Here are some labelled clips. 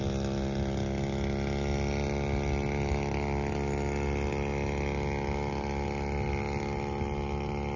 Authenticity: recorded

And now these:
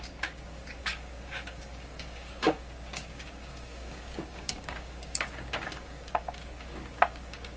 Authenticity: remade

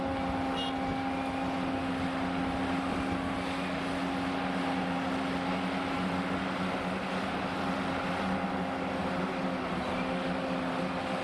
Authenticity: recorded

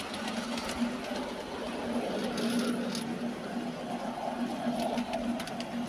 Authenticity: recorded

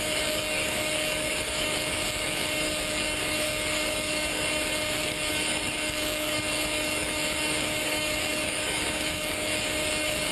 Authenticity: remade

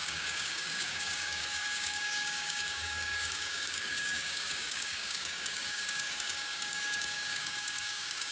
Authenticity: remade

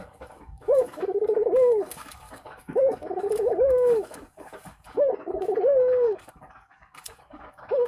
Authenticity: remade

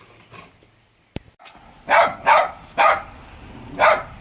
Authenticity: recorded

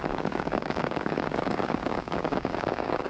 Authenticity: remade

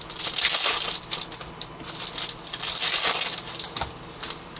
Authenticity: recorded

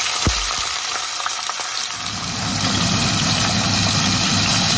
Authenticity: recorded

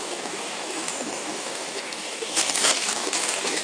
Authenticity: remade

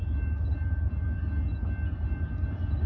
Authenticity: recorded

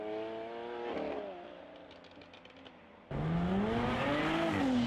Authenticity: recorded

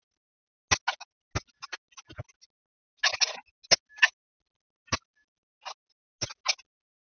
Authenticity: recorded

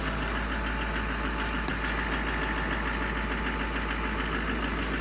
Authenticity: recorded